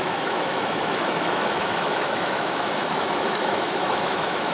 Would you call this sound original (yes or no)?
no